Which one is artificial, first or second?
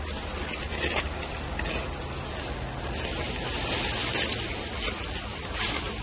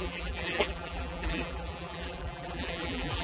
second